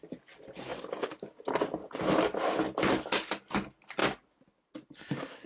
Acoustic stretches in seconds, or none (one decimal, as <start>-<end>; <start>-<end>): 0.0-0.7; 1.2-5.5